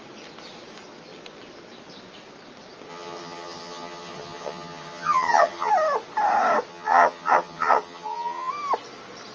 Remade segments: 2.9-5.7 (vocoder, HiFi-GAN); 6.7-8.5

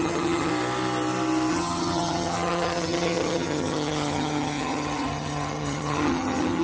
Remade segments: 0.0-0.5 (vocoder, HiFi-GAN); 1.5-6.6

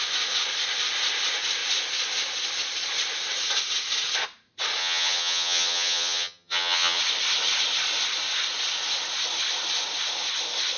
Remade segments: 4.8-7.0 (vocoder, HiFi-GAN)